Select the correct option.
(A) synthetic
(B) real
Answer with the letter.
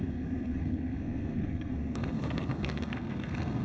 A